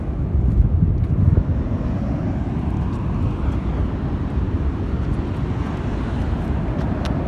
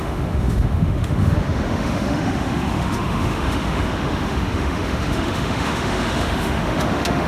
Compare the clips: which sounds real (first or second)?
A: first